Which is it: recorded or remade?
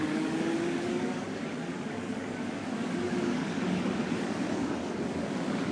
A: remade